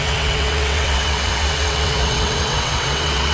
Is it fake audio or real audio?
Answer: fake